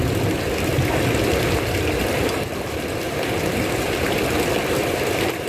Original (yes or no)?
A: no